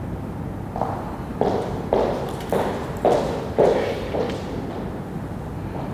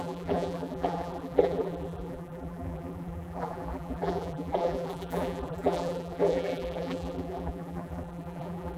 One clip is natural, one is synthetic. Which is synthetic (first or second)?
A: second